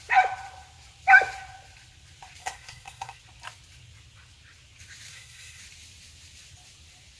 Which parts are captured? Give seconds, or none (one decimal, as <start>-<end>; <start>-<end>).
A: 0.0-2.4; 3.2-5.1; 5.6-7.2